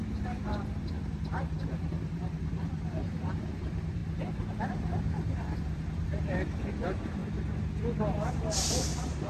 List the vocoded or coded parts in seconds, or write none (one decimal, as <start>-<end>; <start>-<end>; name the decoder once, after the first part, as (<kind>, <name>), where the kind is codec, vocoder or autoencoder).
0.0-4.0 (vocoder, BigVGAN v2); 4.6-7.2; 8.3-9.3